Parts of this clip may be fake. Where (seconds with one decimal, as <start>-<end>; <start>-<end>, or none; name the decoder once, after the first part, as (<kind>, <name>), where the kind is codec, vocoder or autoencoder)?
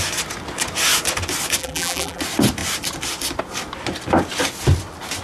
1.6-2.2 (vocoder, BigVGAN v2)